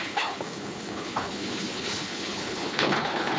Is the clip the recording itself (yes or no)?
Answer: no